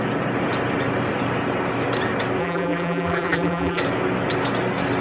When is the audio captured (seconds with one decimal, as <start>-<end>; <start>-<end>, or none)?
0.0-2.4; 3.8-5.0